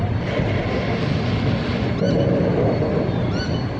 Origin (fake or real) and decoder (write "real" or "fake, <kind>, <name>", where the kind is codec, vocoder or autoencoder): real